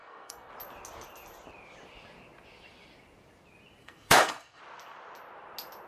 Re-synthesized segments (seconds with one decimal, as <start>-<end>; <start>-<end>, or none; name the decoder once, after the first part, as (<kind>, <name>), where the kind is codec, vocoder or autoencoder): 0.0-0.5 (codec, SNAC); 3.8-4.6